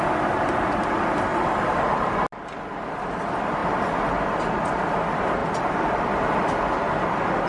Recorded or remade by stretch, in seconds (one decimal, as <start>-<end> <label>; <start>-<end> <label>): 0.0-1.3 recorded; 1.3-1.9 remade; 1.9-5.4 recorded; 5.4-5.9 remade; 5.9-7.5 recorded